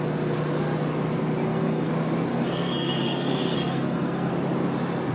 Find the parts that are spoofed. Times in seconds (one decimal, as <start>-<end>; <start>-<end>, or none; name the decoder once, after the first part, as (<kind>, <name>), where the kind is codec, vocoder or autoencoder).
1.4-1.9 (codec, SNAC); 2.3-4.3

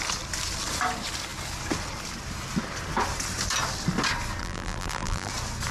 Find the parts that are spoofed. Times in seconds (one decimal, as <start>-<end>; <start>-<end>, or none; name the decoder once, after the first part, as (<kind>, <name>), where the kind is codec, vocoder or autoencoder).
4.4-5.3 (vocoder, BigVGAN v2)

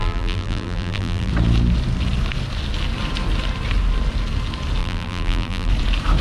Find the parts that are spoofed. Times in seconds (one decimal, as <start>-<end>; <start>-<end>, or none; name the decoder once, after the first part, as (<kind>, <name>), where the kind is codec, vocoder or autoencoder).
0.0-1.3 (vocoder, BigVGAN v2); 4.8-5.7

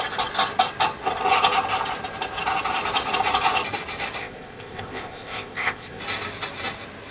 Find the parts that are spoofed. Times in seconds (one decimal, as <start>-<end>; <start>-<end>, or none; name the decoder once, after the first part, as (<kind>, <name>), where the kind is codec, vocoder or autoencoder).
4.2-6.0 (codec, ZipCodec)

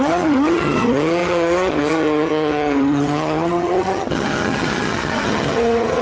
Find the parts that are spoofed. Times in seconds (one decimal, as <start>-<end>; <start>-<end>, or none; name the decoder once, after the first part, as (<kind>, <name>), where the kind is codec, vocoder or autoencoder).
0.0-6.0 (vocoder, HiFi-GAN)

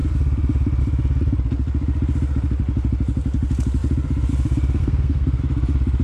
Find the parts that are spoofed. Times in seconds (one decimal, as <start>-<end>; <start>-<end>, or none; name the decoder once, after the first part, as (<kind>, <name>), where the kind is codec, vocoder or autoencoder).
4.8-5.4 (codec, SNAC)

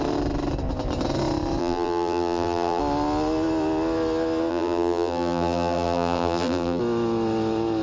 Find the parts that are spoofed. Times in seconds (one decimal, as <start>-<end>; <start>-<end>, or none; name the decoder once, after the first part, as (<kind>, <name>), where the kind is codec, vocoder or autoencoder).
1.6-2.8 (vocoder, BigVGAN v2); 4.5-6.8

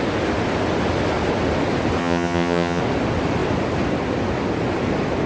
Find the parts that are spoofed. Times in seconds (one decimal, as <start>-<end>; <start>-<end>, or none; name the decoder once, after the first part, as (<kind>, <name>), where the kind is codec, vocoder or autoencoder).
2.0-2.8 (vocoder, HiFi-GAN)